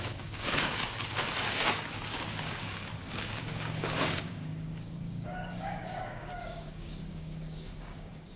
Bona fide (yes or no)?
no